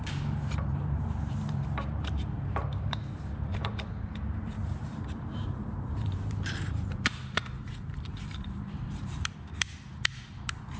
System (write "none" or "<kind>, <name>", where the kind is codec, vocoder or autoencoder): vocoder, BigVGAN v2